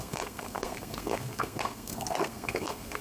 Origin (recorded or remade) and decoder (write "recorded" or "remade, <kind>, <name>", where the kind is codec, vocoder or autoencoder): remade, codec, SNAC